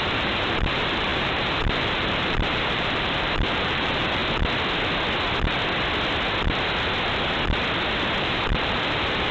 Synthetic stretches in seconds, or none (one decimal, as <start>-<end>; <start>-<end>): 0.0-4.2; 8.2-9.3